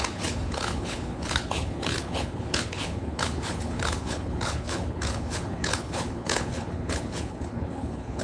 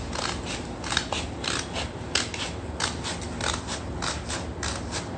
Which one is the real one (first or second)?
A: second